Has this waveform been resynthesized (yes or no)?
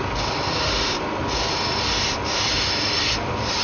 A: no